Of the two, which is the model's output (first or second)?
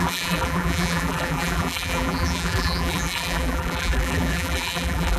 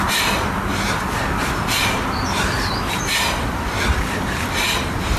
first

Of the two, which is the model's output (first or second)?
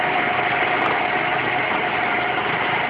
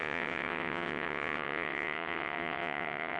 second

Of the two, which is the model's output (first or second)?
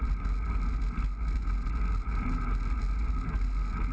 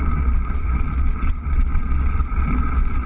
second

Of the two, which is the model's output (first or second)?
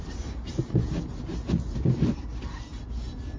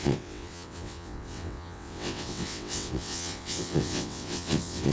second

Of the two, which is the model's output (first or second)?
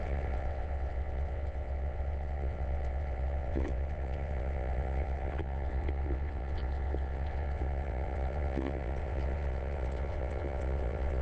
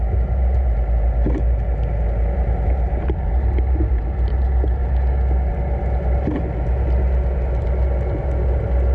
first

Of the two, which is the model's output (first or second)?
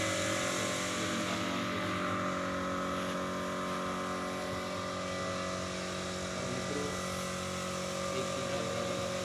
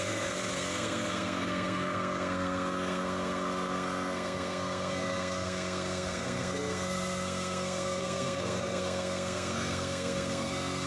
second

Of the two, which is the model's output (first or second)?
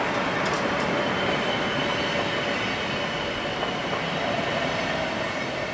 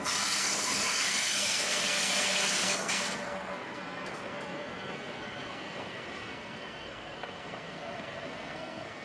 second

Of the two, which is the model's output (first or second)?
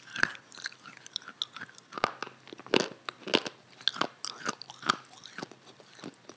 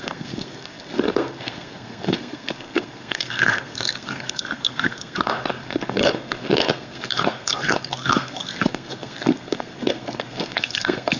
second